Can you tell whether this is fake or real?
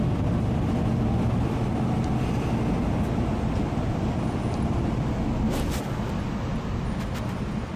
real